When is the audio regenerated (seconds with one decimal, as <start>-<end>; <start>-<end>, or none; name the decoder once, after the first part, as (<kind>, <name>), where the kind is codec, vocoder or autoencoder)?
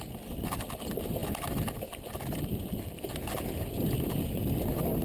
none